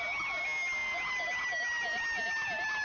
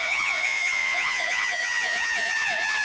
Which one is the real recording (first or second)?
first